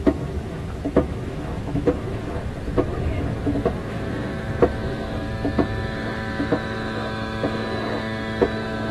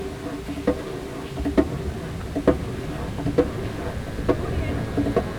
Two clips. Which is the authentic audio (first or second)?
second